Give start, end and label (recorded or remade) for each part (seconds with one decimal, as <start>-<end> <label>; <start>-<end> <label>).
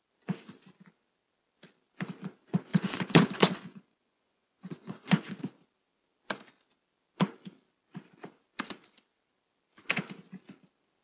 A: 0.0-2.7 recorded; 2.7-5.4 remade; 5.4-11.0 recorded